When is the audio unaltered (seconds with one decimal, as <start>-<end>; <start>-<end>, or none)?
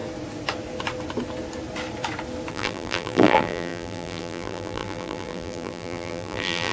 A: 0.0-2.5